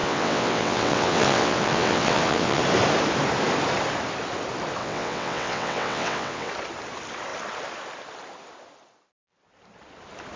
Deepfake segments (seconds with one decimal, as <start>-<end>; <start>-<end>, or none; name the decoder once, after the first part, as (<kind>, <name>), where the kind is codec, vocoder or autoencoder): 0.0-2.6 (vocoder, WaveNeXt); 4.8-6.5